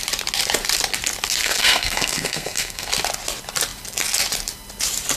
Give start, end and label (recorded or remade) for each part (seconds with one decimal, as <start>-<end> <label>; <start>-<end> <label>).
0.0-1.4 recorded; 1.4-2.9 remade; 2.9-5.2 recorded